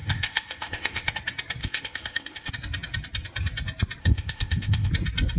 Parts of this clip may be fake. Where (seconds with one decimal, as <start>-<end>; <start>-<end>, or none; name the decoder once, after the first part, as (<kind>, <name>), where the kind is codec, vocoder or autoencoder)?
0.0-1.1 (codec, ZipCodec); 1.6-2.5; 4.0-4.9